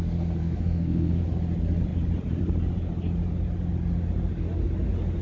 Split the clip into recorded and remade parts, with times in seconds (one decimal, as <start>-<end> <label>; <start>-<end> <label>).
0.0-0.4 recorded; 0.4-1.2 remade; 1.2-5.2 recorded